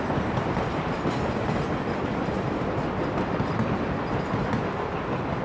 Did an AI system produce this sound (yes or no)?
no